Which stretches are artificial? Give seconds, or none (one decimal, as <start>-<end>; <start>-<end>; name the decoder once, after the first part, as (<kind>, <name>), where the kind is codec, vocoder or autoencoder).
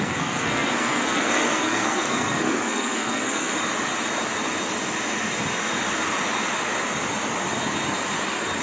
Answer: 0.0-3.5 (codec, SNAC)